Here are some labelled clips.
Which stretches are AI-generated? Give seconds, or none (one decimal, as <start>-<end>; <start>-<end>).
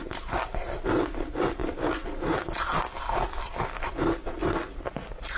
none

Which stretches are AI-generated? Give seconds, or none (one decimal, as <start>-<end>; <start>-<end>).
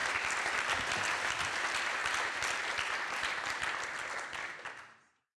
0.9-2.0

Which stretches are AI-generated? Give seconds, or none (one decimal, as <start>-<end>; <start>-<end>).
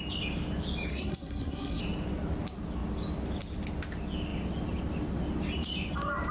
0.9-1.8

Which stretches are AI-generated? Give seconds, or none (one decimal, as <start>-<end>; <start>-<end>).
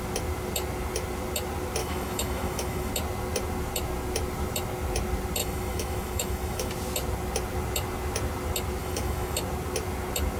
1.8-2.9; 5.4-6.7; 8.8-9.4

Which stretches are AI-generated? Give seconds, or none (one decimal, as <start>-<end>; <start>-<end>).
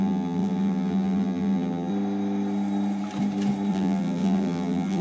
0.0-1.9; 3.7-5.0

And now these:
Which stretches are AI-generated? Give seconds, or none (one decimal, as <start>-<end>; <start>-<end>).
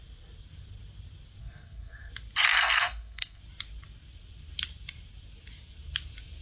1.4-2.1; 2.5-3.4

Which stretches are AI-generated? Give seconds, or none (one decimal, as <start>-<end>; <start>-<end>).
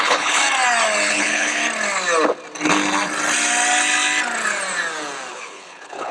0.0-0.4; 1.1-1.6; 5.3-6.1